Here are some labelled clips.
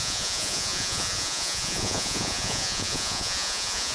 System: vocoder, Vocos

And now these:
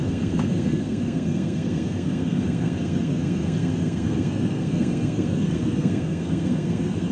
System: codec, SNAC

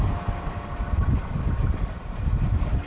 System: none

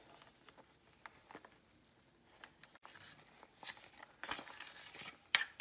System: none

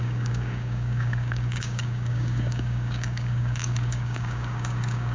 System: codec, DAC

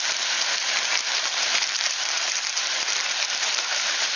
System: vocoder, BigVGAN v2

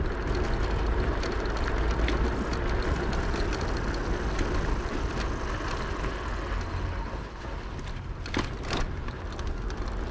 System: none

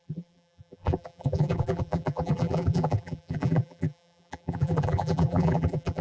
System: vocoder, BigVGAN v2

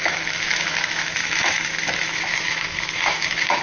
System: autoencoder, DAC-VAE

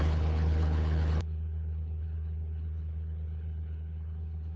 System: codec, HILCodec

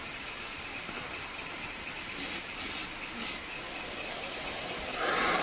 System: none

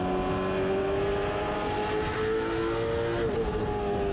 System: none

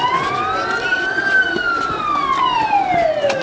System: none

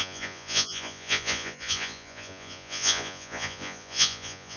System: vocoder, Vocos